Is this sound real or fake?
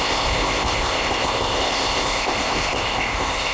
fake